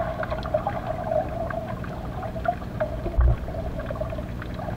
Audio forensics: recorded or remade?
recorded